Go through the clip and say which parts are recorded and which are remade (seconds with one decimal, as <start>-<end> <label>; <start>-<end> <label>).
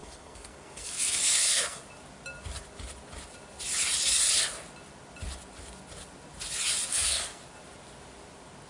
0.0-1.8 remade; 1.8-6.9 recorded; 6.9-7.4 remade; 7.4-8.7 recorded